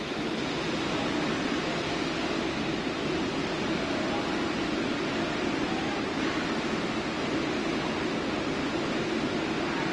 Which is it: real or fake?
real